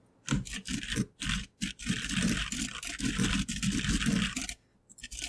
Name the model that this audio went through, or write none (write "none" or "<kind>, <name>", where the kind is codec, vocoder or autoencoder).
none